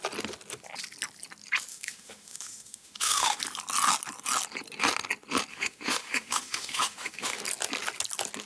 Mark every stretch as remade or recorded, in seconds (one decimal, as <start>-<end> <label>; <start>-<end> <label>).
0.0-1.7 recorded; 1.7-3.4 remade; 3.4-5.5 recorded; 5.5-7.4 remade; 7.4-8.5 recorded

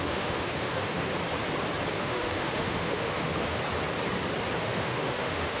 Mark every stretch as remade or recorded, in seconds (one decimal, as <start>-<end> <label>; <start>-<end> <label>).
0.0-1.1 remade; 1.1-1.9 recorded; 1.9-3.6 remade; 3.6-4.6 recorded; 4.6-5.6 remade

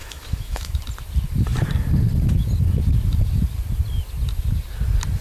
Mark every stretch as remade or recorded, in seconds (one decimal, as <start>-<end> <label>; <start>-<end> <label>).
0.0-0.8 remade; 0.8-5.2 recorded